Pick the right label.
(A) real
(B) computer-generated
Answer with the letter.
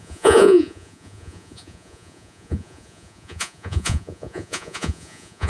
B